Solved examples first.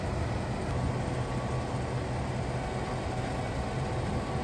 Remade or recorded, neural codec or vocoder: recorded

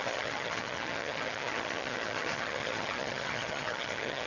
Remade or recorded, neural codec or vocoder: remade, vocoder, HiFi-GAN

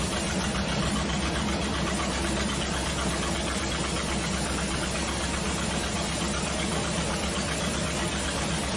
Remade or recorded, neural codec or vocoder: recorded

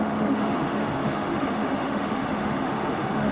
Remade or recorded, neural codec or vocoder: remade, autoencoder, DAC-VAE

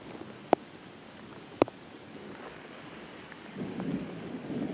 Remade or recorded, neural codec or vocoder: remade, codec, DAC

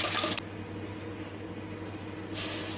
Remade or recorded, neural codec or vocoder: recorded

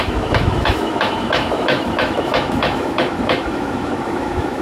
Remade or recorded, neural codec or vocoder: remade, autoencoder, DAC-VAE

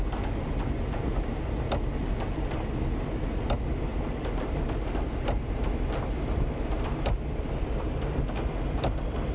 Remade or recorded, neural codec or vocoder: recorded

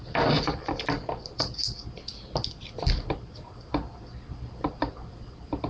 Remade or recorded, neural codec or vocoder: recorded